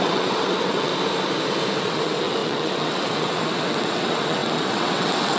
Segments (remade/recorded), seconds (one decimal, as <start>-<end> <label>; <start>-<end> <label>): 0.0-0.9 remade; 0.9-1.8 recorded; 1.8-5.4 remade